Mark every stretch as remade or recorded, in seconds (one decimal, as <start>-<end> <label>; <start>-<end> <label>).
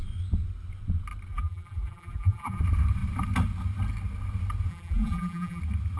0.0-1.3 recorded; 1.3-2.6 remade; 2.6-4.7 recorded; 4.7-5.6 remade; 5.6-6.0 recorded